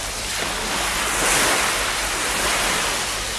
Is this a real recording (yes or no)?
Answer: yes